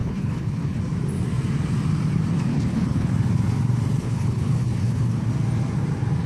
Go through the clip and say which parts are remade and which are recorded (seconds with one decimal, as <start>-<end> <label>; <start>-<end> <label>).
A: 0.0-0.8 remade; 0.8-2.5 recorded; 2.5-3.1 remade; 3.1-4.0 recorded; 4.0-5.2 remade; 5.2-6.3 recorded